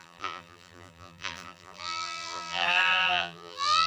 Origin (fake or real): fake